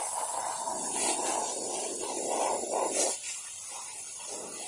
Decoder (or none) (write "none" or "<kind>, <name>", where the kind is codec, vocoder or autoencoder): none